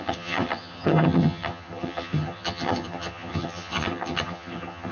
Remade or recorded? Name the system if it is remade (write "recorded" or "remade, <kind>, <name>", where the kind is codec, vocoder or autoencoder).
remade, vocoder, HiFi-GAN